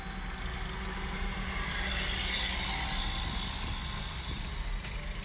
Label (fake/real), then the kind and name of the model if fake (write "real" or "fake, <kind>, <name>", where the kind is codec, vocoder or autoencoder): real